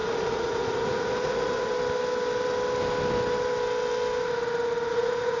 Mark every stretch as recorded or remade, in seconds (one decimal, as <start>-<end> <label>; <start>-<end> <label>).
0.0-1.7 remade; 1.7-4.9 recorded; 4.9-5.4 remade